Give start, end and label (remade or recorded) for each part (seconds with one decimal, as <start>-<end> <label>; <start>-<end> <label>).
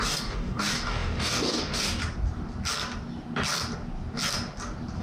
0.0-2.0 remade; 2.0-5.0 recorded